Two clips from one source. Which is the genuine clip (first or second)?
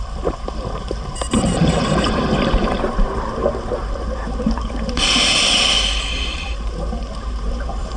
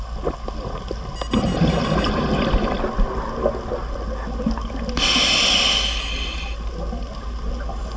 second